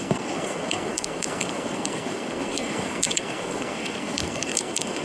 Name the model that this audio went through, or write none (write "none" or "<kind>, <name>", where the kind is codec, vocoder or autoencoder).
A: codec, SNAC